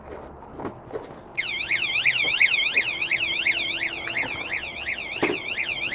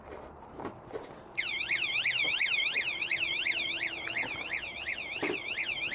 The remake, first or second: second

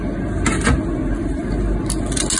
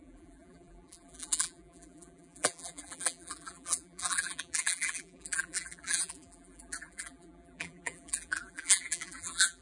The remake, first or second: second